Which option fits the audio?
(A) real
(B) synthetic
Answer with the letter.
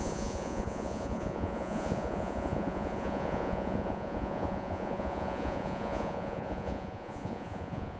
B